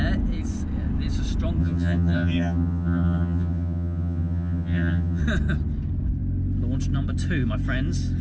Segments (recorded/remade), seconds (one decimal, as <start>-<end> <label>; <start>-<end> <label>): 0.0-1.6 recorded; 1.6-5.2 remade; 5.2-8.2 recorded